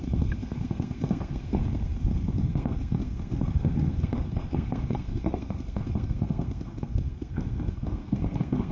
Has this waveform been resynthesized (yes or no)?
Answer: yes